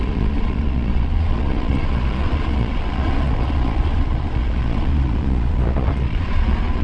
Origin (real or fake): fake